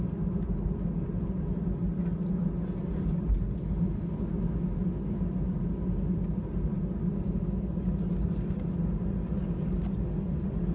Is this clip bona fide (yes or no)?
yes